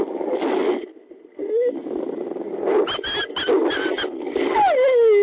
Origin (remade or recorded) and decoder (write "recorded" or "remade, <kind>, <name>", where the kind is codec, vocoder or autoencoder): recorded